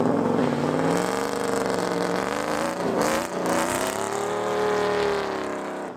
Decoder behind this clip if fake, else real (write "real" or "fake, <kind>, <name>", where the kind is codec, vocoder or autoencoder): real